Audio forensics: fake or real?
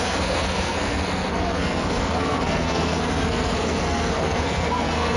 fake